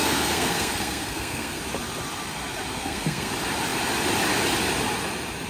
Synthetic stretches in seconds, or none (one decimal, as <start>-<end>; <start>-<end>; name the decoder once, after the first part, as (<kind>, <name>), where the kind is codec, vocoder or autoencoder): 0.0-1.6 (codec, SNAC); 2.8-3.3